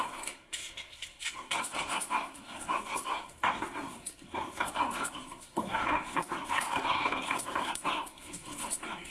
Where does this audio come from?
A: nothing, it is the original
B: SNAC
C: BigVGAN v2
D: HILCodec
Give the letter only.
B